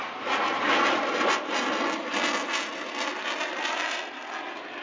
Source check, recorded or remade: recorded